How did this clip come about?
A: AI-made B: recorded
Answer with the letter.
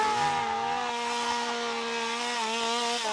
B